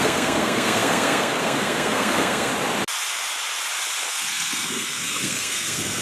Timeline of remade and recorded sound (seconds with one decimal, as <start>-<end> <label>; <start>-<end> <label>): 0.0-2.5 remade; 2.5-4.1 recorded; 4.1-6.0 remade